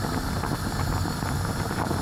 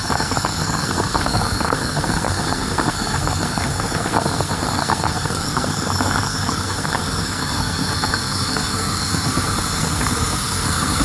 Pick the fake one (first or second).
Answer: second